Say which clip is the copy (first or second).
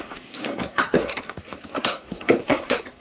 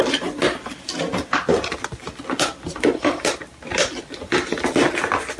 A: first